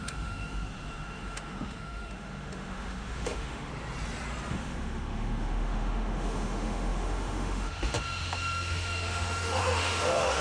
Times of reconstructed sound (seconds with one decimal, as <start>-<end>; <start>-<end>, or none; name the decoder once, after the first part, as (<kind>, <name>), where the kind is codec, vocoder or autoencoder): 0.0-3.7 (autoencoder, DAC-VAE); 4.5-10.4